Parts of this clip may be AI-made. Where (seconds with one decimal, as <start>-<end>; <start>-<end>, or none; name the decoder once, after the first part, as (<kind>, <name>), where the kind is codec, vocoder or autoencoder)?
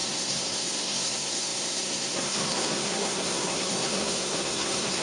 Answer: 0.0-5.0 (codec, SNAC)